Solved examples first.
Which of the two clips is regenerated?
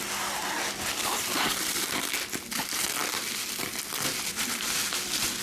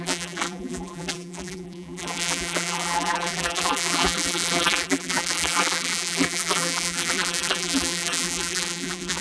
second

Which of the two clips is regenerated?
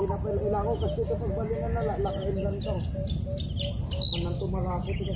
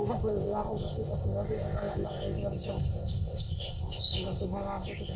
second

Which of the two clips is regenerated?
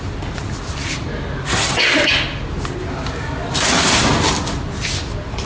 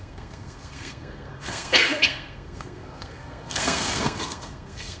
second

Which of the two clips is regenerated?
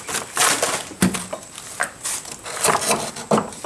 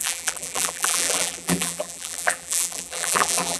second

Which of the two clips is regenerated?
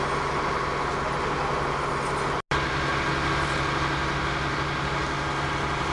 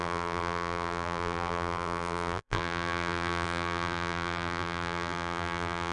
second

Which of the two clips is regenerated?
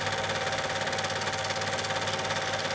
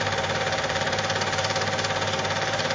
second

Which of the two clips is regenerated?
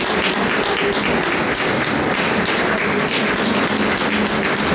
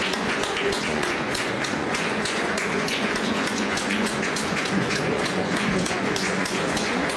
second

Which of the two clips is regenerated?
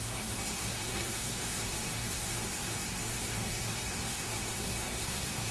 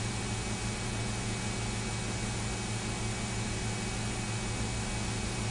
first